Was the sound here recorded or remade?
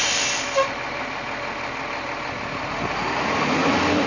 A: recorded